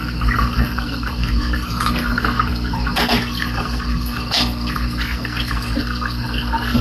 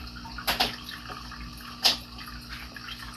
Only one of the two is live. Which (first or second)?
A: second